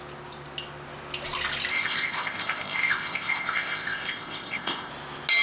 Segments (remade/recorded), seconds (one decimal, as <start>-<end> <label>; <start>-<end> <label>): 0.0-1.7 recorded; 1.7-4.9 remade; 4.9-5.4 recorded